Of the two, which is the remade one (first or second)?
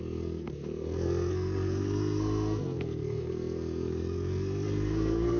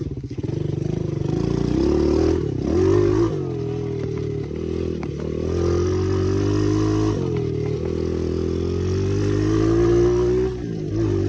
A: first